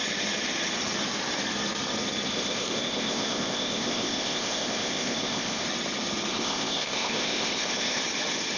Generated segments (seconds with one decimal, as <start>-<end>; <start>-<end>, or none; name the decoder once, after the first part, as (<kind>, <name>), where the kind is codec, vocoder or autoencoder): 2.3-5.6 (codec, ZipCodec); 6.3-8.0